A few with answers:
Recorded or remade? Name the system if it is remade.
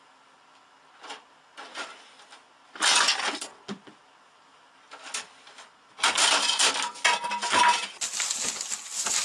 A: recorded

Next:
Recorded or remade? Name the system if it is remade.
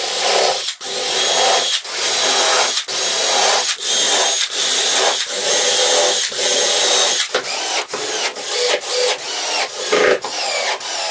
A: recorded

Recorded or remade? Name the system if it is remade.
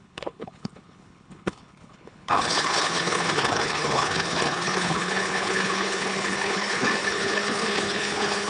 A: remade, codec, HILCodec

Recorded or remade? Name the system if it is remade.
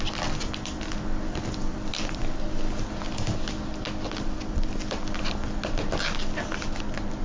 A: recorded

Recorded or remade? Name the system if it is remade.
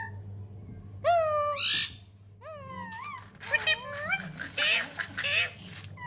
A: recorded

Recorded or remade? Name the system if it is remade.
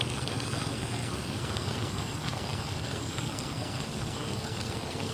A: remade, codec, SNAC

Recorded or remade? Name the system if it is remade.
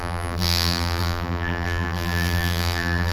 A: remade, vocoder, BigVGAN v2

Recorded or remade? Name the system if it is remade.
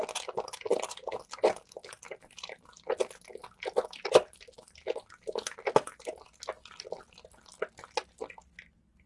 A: recorded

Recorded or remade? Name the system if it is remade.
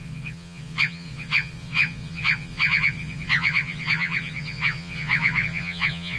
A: remade, vocoder, Vocos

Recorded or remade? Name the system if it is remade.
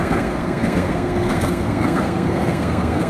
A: remade, codec, SNAC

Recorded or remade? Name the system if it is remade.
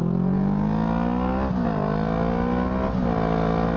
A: recorded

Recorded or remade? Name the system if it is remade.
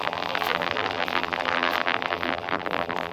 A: remade, vocoder, BigVGAN v2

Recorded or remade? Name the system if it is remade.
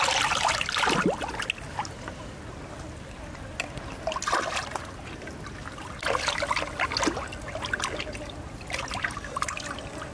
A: recorded